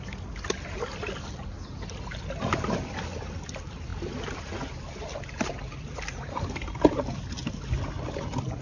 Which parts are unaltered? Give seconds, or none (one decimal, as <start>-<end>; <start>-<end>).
0.0-8.6